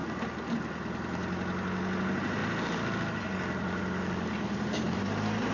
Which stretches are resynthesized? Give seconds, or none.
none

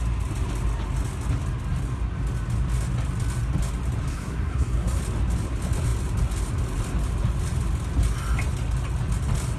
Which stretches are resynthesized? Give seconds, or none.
4.1-5.0

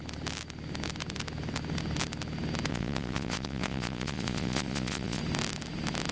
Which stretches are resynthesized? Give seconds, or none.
2.7-5.2

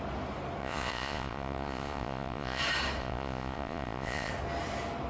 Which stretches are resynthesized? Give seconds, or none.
0.6-2.6; 3.0-4.3

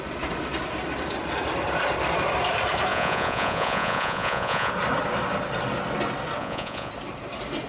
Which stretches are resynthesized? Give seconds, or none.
2.9-4.7; 6.4-6.9

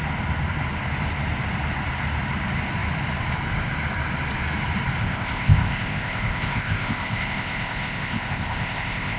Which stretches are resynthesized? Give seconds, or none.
5.0-9.2

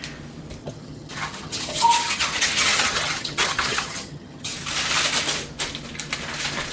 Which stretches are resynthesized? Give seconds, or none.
0.6-4.6